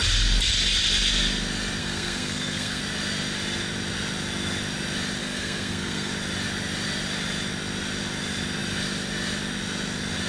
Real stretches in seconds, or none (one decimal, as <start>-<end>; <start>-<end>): 0.0-1.8; 2.8-5.2; 6.1-10.3

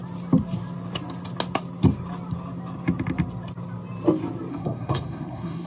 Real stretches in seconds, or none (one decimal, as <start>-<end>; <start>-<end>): 0.0-4.5